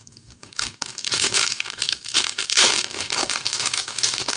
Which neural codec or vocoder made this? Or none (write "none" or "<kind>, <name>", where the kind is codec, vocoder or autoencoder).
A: codec, DAC